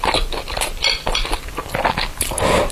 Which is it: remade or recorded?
recorded